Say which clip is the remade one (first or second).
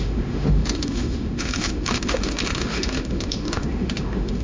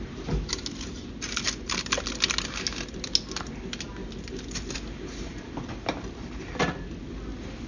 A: first